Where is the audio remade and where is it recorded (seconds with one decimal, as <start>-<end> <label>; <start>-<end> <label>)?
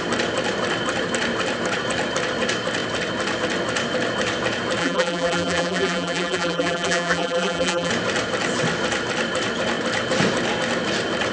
0.0-4.8 recorded; 4.8-7.9 remade; 7.9-11.3 recorded